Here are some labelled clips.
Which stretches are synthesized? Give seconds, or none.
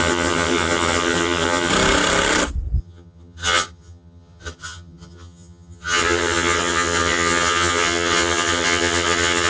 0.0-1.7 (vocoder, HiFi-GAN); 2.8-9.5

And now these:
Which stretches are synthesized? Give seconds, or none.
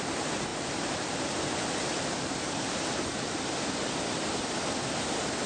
0.5-3.4 (vocoder, BigVGAN v2)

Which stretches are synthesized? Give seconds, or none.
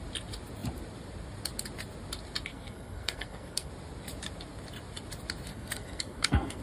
2.5-3.7 (codec, SNAC); 5.5-6.6